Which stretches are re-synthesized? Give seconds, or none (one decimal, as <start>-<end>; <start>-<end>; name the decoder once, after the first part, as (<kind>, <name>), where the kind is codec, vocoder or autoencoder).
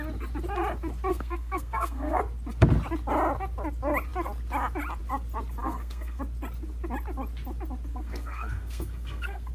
1.1-2.2 (codec, SNAC); 5.6-6.2; 7.9-9.5